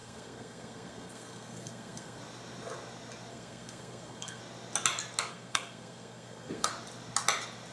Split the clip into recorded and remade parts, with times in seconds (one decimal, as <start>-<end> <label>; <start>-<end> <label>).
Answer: 0.0-2.2 remade; 2.2-3.3 recorded; 3.3-4.4 remade; 4.4-5.3 recorded; 5.3-6.7 remade; 6.7-7.7 recorded

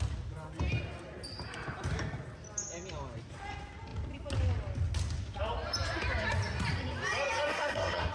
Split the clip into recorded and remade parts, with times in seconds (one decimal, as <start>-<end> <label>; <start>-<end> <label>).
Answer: 0.0-7.5 recorded; 7.5-8.1 remade

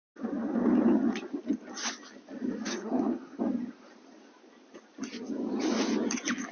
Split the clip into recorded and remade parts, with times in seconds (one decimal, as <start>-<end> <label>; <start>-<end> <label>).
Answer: 0.0-2.7 recorded; 2.7-3.4 remade; 3.4-6.5 recorded

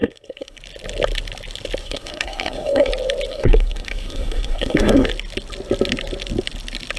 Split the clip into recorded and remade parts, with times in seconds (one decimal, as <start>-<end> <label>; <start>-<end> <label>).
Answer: 0.0-0.6 remade; 0.6-1.8 recorded; 1.8-2.9 remade; 2.9-3.3 recorded; 3.3-5.1 remade; 5.1-7.0 recorded

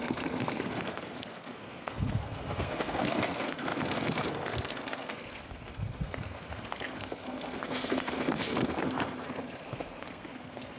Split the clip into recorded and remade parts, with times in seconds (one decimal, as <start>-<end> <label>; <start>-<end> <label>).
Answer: 0.0-10.8 remade

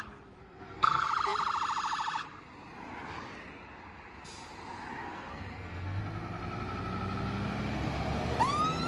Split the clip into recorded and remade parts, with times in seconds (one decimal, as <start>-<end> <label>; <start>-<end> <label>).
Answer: 0.0-0.4 recorded; 0.4-1.1 remade; 1.1-4.9 recorded; 4.9-6.0 remade; 6.0-8.9 recorded

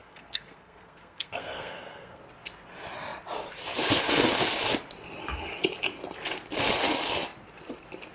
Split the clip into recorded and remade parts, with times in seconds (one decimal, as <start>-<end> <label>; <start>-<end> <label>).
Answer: 0.0-2.2 remade; 2.2-8.1 recorded

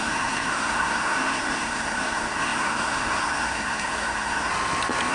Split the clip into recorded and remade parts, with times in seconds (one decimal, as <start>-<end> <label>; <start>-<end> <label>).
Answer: 0.0-4.5 remade; 4.5-5.1 recorded